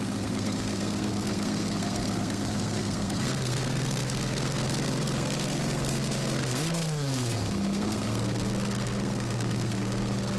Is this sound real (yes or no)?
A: no